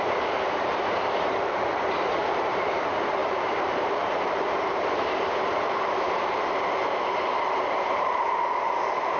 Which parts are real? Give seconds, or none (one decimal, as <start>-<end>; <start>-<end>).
none